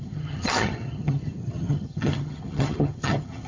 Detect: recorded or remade remade